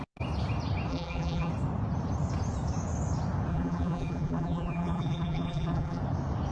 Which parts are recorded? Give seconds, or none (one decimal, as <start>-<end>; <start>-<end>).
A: 0.0-0.9; 1.5-3.5; 6.0-6.5